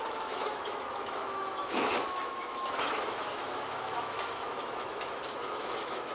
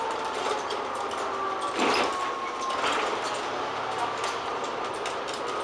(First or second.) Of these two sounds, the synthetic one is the first